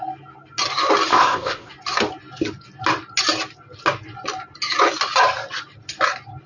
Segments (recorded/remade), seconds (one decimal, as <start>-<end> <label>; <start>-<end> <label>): 0.0-1.1 recorded; 1.1-1.7 remade; 1.7-6.5 recorded

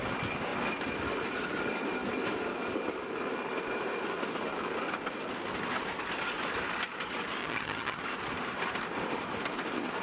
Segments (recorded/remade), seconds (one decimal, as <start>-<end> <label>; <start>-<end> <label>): 0.0-7.4 recorded; 7.4-8.0 remade; 8.0-10.0 recorded

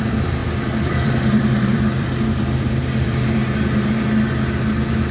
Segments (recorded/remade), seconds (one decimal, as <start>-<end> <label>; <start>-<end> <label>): 0.0-3.4 remade; 3.4-5.1 recorded

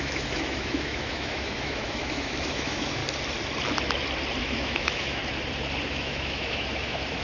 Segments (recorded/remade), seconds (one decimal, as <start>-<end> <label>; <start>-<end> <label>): 0.0-3.0 remade; 3.0-4.4 recorded; 4.4-5.2 remade; 5.2-5.9 recorded; 5.9-7.2 remade

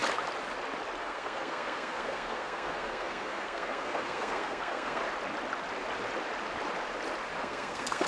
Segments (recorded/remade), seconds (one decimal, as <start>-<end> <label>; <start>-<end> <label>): 0.0-1.0 recorded; 1.0-5.0 remade; 5.0-7.4 recorded; 7.4-8.1 remade

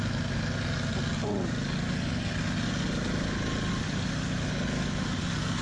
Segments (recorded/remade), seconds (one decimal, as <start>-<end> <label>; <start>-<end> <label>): 0.0-5.6 recorded

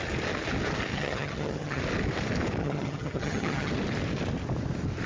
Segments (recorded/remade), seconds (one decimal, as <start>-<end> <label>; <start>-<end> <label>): 0.0-0.9 recorded; 0.9-1.8 remade; 1.8-2.6 recorded; 2.6-3.7 remade; 3.7-5.1 recorded